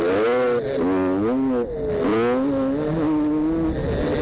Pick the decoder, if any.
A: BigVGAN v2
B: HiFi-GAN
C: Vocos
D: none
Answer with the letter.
D